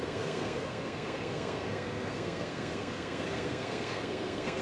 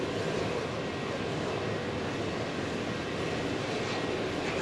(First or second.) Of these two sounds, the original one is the second